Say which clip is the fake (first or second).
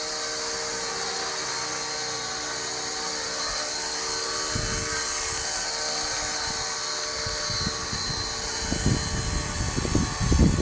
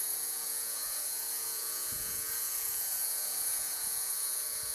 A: second